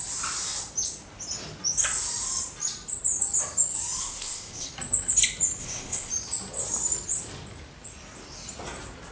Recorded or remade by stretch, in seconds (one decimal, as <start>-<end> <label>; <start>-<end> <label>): 0.0-4.0 recorded; 4.0-4.7 remade; 4.7-5.6 recorded; 5.6-6.1 remade; 6.1-9.1 recorded